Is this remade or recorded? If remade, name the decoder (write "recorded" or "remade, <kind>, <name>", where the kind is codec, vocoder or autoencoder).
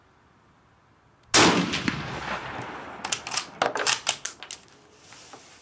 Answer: recorded